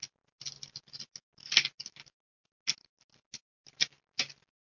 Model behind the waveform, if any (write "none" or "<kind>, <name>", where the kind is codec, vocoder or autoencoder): none